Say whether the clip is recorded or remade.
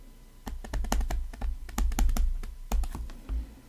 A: recorded